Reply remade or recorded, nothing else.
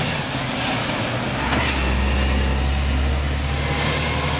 recorded